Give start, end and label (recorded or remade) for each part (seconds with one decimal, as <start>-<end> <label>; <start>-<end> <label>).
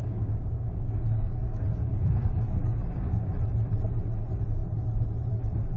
0.0-3.3 remade; 3.3-5.8 recorded